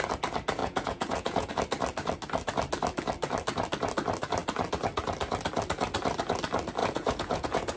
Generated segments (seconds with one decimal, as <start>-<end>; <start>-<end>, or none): 0.6-1.5; 6.8-7.8